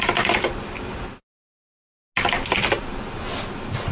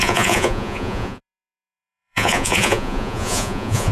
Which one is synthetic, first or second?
second